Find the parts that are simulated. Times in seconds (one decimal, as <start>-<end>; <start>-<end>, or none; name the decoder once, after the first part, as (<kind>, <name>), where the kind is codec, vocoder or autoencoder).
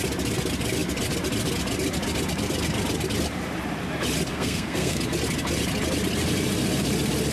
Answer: 4.3-5.0 (codec, SNAC)